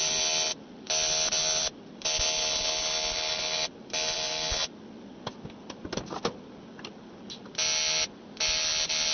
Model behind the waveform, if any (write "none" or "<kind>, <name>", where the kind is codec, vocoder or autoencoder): none